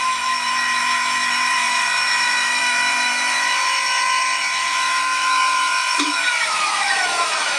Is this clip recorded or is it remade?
remade